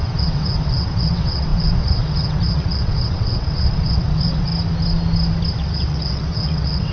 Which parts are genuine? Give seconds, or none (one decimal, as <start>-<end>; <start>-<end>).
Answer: 4.5-5.5